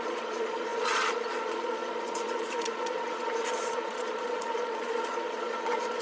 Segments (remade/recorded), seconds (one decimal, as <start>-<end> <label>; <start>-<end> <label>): 0.0-6.0 remade